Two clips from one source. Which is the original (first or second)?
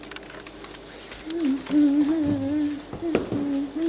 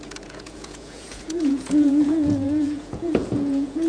first